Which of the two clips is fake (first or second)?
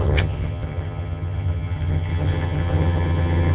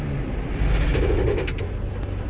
first